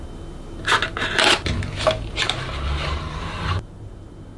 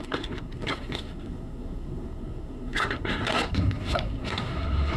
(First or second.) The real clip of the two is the first